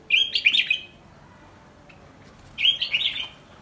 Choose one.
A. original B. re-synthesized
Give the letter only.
A